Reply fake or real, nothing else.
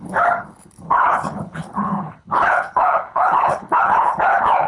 fake